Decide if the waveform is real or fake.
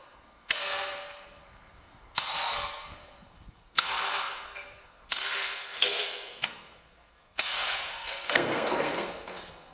fake